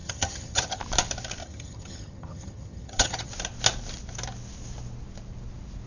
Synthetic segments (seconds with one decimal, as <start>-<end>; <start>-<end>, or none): 0.0-0.8; 1.4-3.3